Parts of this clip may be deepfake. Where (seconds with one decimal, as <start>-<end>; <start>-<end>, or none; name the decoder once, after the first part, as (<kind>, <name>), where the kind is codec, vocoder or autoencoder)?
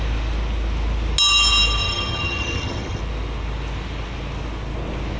1.8-3.0 (vocoder, HiFi-GAN)